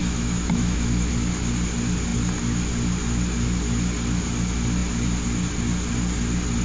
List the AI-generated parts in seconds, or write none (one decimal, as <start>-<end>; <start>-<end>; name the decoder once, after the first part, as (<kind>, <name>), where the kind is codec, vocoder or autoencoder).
0.0-1.1 (autoencoder, DAC-VAE)